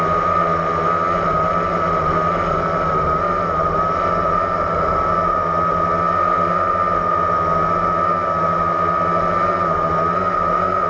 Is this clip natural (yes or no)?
yes